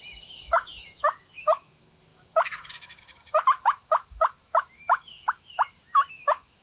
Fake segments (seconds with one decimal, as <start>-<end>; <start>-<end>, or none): 0.0-6.6